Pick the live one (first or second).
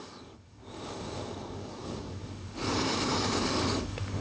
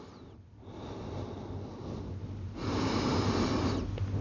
second